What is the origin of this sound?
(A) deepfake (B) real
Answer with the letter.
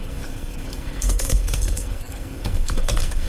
A